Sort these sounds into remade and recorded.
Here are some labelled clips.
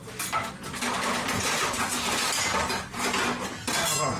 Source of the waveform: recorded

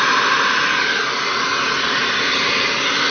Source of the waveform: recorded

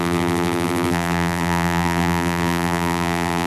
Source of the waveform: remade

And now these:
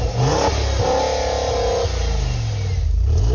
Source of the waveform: recorded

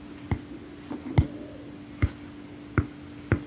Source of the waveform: recorded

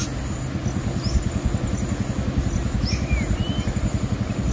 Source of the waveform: recorded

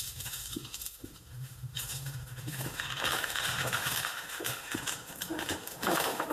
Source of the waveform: remade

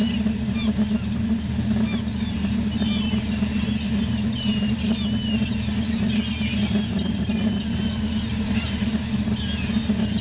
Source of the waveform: recorded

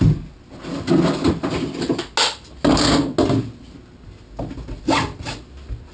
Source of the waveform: recorded